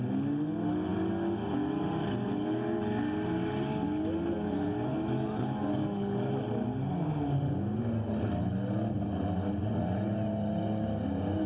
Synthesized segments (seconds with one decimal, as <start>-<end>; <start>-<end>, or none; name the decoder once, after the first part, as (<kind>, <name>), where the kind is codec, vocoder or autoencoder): none